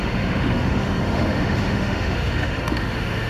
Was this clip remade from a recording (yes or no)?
yes